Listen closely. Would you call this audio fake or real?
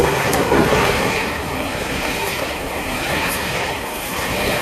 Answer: fake